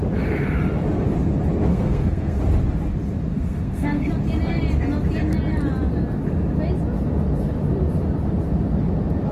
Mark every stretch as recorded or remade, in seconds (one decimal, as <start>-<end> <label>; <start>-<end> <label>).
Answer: 0.0-1.7 recorded; 1.7-2.4 remade; 2.4-3.3 recorded; 3.3-4.1 remade; 4.1-9.3 recorded